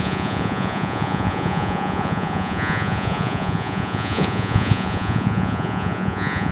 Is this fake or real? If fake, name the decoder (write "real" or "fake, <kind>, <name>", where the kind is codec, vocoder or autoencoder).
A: fake, vocoder, Vocos